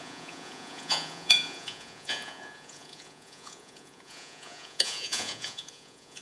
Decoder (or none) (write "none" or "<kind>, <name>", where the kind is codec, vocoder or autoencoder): vocoder, Vocos